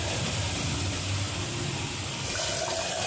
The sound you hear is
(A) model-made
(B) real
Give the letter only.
B